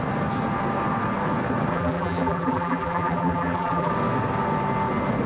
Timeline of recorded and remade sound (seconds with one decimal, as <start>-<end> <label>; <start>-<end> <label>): 0.0-1.7 recorded; 1.7-3.9 remade; 3.9-5.3 recorded